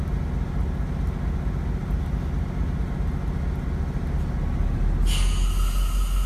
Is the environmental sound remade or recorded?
recorded